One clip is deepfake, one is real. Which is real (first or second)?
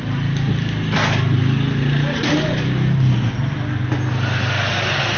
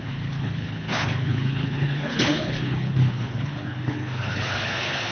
first